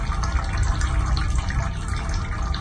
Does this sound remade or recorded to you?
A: recorded